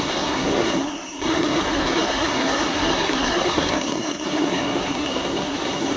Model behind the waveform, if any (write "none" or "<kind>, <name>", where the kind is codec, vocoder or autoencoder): codec, SNAC